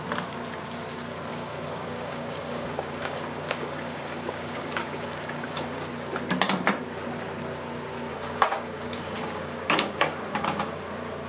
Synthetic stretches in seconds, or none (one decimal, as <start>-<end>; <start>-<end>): 1.3-5.9; 8.1-10.8